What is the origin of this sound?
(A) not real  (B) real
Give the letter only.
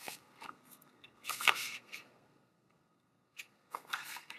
A